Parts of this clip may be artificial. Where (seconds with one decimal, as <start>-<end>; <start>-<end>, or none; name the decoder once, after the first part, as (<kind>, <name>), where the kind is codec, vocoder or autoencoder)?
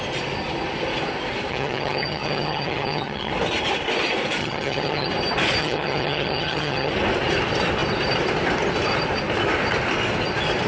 1.5-3.3 (vocoder, HiFi-GAN); 4.4-5.1; 5.6-6.9